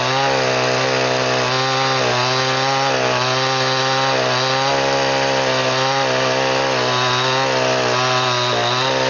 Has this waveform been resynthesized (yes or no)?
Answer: no